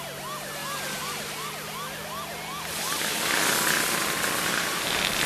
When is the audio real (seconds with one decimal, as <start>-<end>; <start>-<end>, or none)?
0.0-5.3